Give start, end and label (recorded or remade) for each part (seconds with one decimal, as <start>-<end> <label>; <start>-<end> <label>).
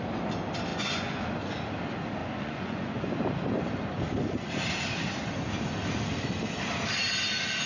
0.0-0.7 recorded; 0.7-1.2 remade; 1.2-2.2 recorded; 2.2-3.1 remade; 3.1-7.7 recorded